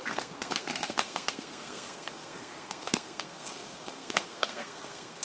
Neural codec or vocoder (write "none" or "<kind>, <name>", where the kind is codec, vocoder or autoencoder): codec, SNAC